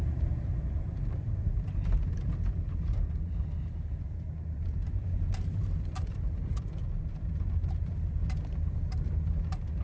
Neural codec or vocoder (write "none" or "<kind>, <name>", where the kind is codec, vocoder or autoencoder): vocoder, BigVGAN v2